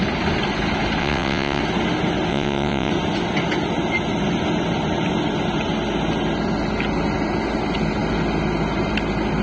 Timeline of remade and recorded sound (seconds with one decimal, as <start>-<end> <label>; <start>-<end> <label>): 0.0-1.0 recorded; 1.0-1.6 remade; 1.6-2.3 recorded; 2.3-2.9 remade; 2.9-9.4 recorded